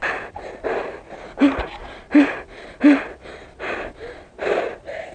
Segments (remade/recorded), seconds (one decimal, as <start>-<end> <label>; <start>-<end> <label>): 0.0-5.1 recorded